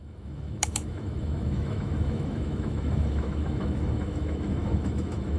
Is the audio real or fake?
fake